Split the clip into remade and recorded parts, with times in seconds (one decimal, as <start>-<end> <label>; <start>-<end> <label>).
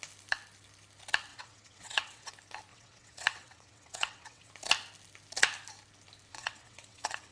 0.0-1.3 recorded; 1.3-2.3 remade; 2.3-2.7 recorded; 2.7-4.5 remade; 4.5-6.3 recorded; 6.3-7.3 remade